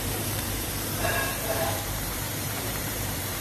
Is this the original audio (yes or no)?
no